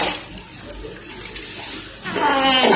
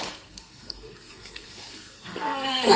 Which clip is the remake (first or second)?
second